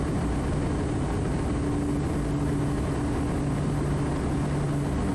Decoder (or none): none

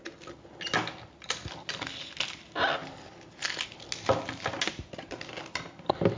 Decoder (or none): none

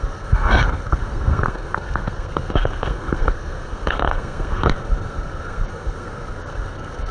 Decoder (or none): codec, SNAC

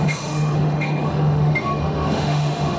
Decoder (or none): autoencoder, DAC-VAE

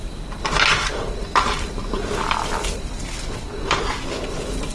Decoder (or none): none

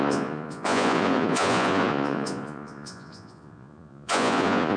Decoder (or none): vocoder, Vocos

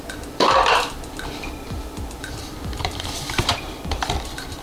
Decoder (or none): vocoder, BigVGAN v2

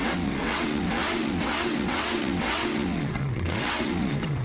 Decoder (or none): vocoder, WaveNeXt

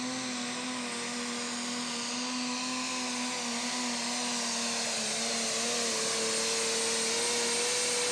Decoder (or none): none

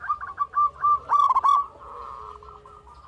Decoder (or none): none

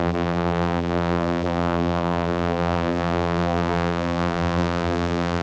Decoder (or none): vocoder, BigVGAN v2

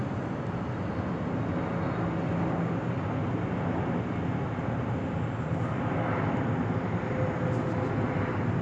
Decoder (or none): none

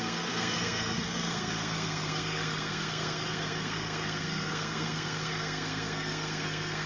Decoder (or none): codec, SNAC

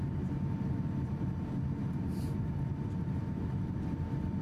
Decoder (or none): vocoder, BigVGAN v2